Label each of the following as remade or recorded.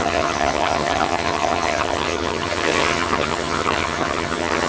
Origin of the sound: remade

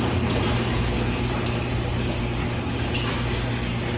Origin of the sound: recorded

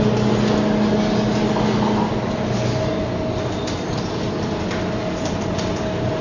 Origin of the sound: recorded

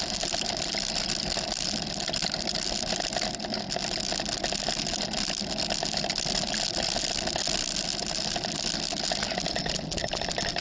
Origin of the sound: recorded